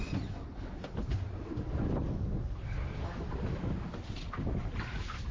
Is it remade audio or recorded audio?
recorded